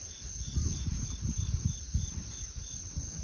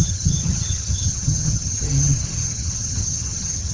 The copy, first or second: second